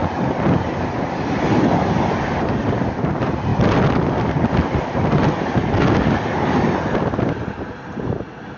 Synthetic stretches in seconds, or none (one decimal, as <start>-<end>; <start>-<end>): 2.3-3.5